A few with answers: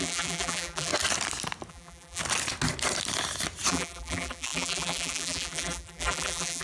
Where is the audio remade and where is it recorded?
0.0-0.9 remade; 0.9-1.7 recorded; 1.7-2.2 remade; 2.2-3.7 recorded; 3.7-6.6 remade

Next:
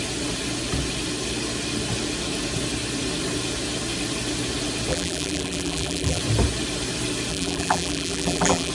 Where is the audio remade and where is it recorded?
0.0-4.9 recorded; 4.9-6.2 remade; 6.2-7.3 recorded; 7.3-8.7 remade

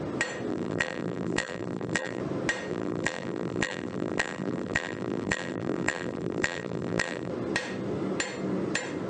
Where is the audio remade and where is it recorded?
0.0-0.5 recorded; 0.5-2.2 remade; 2.2-2.7 recorded; 2.7-7.3 remade; 7.3-9.1 recorded

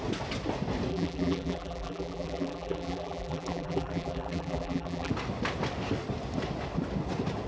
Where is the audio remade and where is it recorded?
0.0-0.9 recorded; 0.9-5.1 remade; 5.1-7.5 recorded